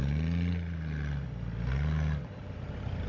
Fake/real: real